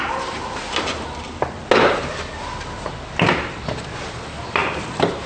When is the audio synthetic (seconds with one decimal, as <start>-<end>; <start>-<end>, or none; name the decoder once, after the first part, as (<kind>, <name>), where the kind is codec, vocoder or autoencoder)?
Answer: none